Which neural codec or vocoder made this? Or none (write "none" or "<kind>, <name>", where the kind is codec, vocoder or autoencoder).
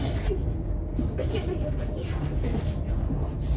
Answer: none